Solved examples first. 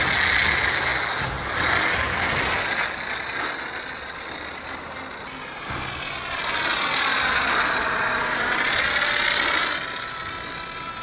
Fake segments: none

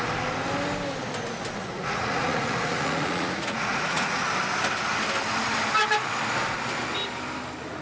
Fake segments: 1.6-4.3 (vocoder, Vocos)

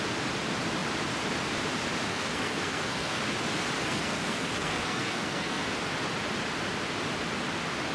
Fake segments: 2.1-3.2 (codec, SNAC); 3.8-5.7

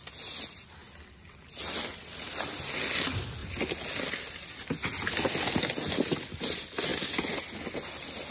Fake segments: none

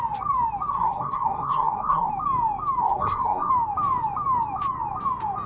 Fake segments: 0.7-2.1 (codec, SNAC); 2.8-3.5

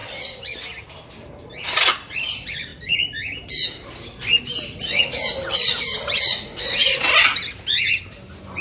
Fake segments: none